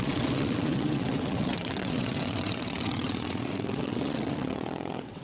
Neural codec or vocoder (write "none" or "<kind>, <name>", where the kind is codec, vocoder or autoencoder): vocoder, WaveNeXt